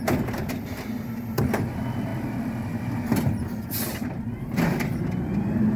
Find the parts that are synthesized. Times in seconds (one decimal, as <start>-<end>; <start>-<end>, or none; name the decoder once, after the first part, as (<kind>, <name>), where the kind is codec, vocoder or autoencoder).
none